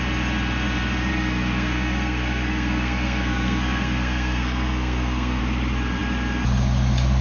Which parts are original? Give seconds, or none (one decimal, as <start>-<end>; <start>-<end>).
0.0-1.1; 5.4-7.2